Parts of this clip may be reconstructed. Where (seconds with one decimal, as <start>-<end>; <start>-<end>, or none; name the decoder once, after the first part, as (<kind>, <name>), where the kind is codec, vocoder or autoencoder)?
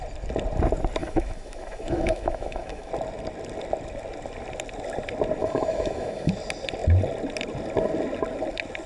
1.0-2.9 (autoencoder, DAC-VAE); 5.4-6.3